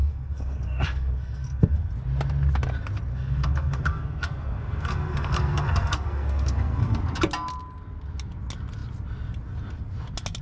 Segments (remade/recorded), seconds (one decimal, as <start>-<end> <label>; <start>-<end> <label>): 0.0-1.9 remade; 1.9-3.1 recorded; 3.1-7.0 remade; 7.0-10.4 recorded